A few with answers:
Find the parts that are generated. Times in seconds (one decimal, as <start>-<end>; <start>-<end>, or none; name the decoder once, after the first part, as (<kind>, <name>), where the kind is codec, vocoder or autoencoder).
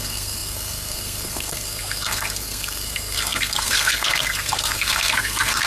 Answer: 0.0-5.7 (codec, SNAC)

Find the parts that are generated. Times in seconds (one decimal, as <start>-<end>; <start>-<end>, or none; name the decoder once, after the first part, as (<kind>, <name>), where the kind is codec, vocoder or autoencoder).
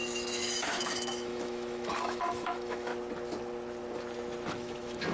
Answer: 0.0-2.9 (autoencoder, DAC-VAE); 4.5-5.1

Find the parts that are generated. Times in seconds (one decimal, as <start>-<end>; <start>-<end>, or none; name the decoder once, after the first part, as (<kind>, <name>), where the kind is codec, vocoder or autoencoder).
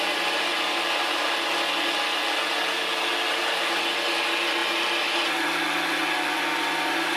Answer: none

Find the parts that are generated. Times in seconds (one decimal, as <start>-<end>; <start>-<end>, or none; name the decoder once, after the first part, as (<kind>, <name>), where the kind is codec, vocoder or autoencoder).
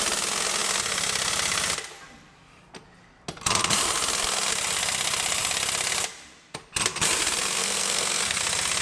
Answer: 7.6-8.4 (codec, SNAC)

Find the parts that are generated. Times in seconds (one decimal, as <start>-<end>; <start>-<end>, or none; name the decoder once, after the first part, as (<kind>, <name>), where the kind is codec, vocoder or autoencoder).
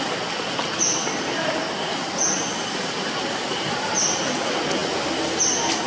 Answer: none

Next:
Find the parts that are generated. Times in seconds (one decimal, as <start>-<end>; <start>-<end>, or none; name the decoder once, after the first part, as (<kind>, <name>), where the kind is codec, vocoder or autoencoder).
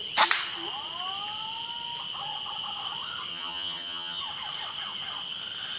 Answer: 3.3-4.2 (vocoder, HiFi-GAN)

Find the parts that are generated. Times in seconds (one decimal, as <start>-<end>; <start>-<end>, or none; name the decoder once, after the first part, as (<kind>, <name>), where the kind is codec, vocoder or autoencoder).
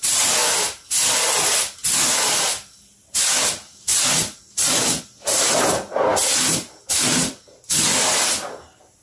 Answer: 6.1-7.3 (vocoder, BigVGAN v2)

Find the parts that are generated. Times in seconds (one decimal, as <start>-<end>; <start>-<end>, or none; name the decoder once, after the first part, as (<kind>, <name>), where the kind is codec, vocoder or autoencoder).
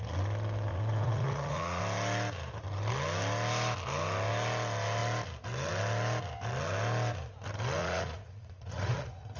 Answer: 0.7-1.8 (vocoder, Vocos); 7.8-9.4